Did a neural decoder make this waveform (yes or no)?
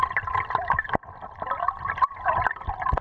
no